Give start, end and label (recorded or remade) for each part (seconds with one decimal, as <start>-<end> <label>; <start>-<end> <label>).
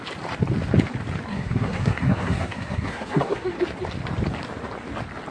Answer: 0.0-1.3 recorded; 1.3-3.6 remade; 3.6-5.3 recorded